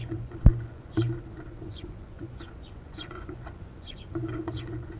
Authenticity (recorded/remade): remade